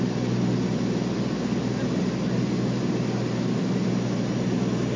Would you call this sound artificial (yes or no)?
no